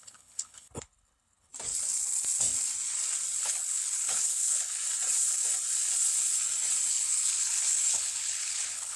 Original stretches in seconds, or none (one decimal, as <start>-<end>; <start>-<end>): 1.5-3.4; 4.8-6.9